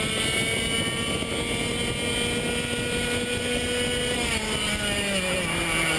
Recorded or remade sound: recorded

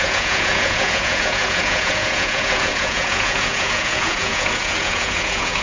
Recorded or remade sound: remade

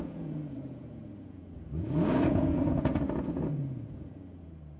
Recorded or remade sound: remade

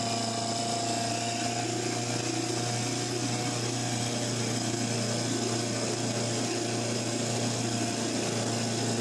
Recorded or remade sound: recorded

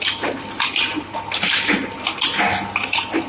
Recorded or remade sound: recorded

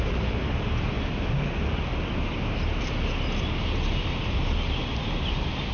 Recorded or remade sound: recorded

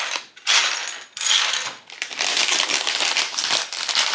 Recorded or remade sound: recorded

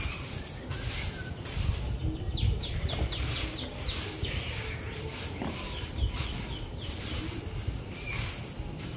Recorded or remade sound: recorded